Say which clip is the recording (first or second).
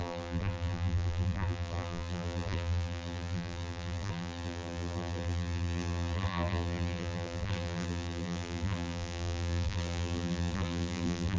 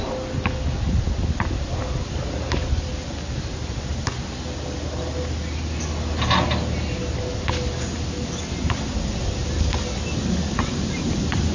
second